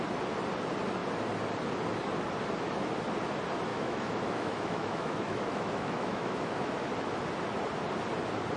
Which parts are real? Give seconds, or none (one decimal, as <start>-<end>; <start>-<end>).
0.0-3.7; 6.9-8.6